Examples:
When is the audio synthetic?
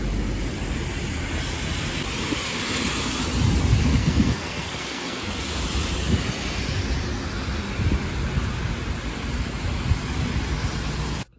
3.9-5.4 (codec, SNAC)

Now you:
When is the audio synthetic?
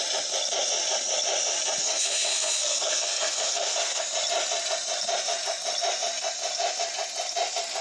1.8-4.0 (codec, SNAC)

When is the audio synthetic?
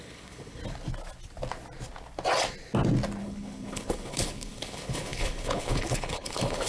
0.0-0.6 (codec, HILCodec); 3.2-6.7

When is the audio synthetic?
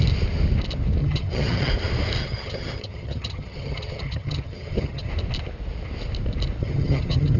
1.0-1.7 (vocoder, HiFi-GAN); 2.2-5.1; 6.6-7.4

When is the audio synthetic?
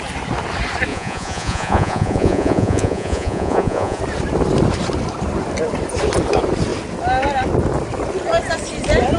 0.9-4.0 (vocoder, Vocos)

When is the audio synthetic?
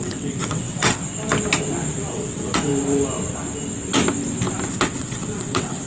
0.0-1.0 (vocoder, WaveNeXt); 2.1-2.7; 4.7-5.9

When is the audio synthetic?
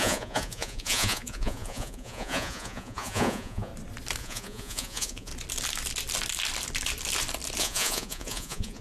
0.0-3.7 (vocoder, Vocos); 4.2-5.3; 7.6-8.8